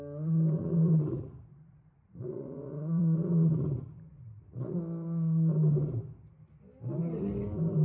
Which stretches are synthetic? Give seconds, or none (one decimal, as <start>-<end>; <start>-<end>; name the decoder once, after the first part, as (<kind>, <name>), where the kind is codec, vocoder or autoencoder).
0.6-4.8 (vocoder, Vocos)